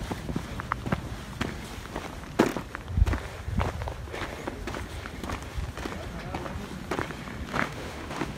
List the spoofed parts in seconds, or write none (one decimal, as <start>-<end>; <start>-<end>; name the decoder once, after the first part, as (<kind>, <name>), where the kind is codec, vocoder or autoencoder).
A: 7.5-8.4 (autoencoder, DAC-VAE)